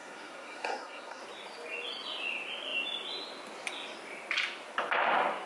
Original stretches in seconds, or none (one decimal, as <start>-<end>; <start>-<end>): 1.2-5.5